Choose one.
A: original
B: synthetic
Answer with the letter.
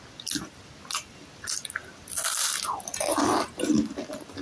A